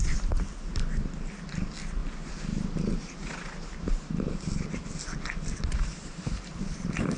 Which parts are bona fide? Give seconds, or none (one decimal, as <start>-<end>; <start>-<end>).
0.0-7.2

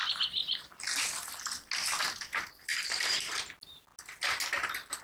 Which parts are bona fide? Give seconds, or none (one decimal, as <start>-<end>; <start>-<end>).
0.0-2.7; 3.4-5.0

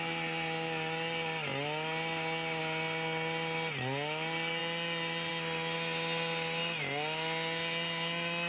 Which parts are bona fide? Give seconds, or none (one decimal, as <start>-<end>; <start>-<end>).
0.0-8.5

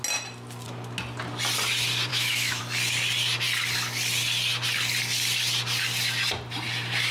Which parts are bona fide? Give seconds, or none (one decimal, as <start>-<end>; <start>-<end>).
0.0-2.1; 2.6-7.1

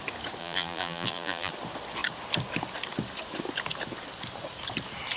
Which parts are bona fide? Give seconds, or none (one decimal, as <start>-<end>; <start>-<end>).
0.0-0.4; 1.5-5.2

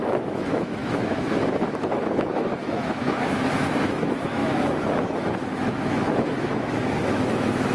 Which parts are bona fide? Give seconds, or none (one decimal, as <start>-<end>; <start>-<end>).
none